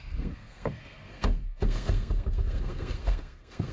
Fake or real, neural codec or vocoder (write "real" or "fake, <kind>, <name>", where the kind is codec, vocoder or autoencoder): fake, codec, SNAC